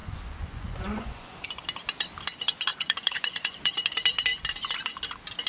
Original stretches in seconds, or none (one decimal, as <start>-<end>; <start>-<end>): 1.5-2.7; 3.7-5.5